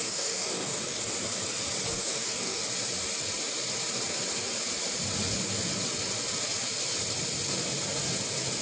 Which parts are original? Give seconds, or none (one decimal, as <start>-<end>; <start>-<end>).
1.0-1.9; 2.6-8.6